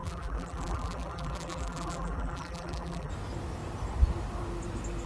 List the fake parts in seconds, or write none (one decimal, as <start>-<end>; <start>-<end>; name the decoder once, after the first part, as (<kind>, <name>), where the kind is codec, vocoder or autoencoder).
0.0-3.1 (vocoder, BigVGAN v2)